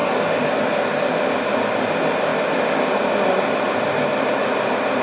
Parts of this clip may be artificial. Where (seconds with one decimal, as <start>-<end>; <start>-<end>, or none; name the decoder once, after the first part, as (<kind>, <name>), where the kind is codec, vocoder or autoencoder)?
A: 0.0-0.5 (codec, DAC)